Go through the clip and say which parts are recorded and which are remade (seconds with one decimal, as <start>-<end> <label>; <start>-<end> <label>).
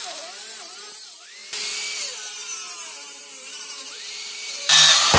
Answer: 0.0-2.4 recorded; 2.4-5.2 remade